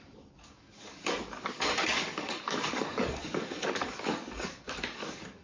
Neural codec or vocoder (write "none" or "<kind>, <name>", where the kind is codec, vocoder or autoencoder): codec, DAC